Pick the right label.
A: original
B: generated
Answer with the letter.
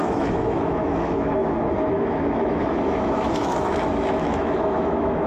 B